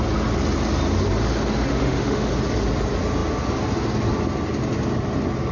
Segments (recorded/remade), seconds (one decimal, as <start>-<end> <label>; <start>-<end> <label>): 0.0-1.7 recorded; 1.7-2.3 remade; 2.3-5.5 recorded